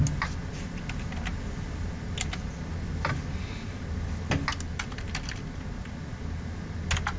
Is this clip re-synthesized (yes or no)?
no